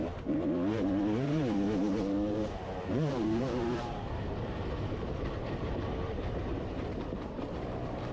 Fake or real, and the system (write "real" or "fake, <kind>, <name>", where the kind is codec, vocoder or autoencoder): fake, vocoder, BigVGAN v2